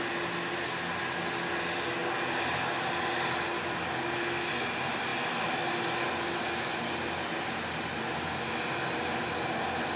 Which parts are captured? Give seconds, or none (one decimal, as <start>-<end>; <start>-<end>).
0.0-10.0